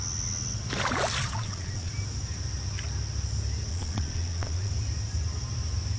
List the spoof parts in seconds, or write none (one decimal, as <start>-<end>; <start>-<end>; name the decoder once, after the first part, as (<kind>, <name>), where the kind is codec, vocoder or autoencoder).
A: 1.2-1.9 (vocoder, Vocos); 3.7-4.7

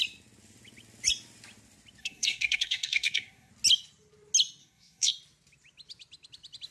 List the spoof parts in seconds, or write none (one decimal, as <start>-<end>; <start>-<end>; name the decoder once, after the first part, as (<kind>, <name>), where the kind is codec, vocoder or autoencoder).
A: 2.0-3.5 (codec, SNAC); 4.6-5.1

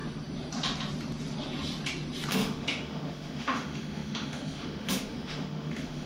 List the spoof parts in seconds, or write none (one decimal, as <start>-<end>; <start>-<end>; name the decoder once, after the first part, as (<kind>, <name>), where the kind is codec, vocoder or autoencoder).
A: 2.3-6.1 (autoencoder, DAC-VAE)

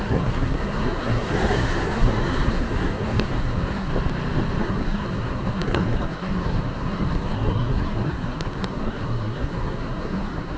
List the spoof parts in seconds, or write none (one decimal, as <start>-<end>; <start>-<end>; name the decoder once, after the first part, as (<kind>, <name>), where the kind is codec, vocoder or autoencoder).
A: 0.0-3.9 (codec, SNAC); 4.6-10.6